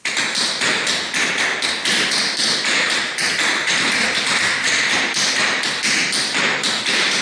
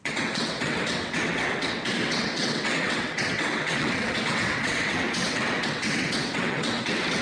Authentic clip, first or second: first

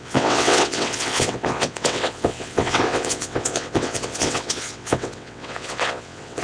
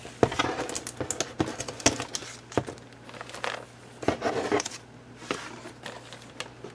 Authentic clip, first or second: second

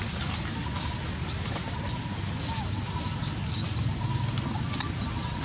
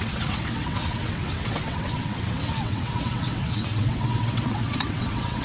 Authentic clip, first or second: first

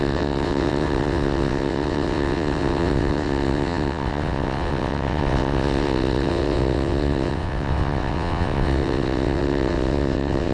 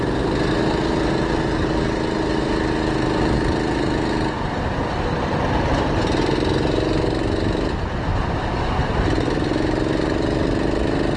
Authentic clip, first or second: second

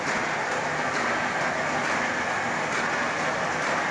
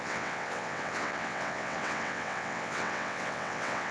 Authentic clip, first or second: first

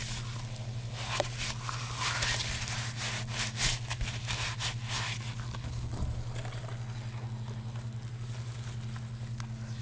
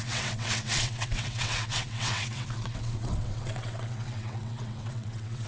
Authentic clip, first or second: first